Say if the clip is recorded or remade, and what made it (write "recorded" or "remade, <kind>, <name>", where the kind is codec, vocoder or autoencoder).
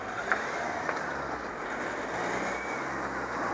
recorded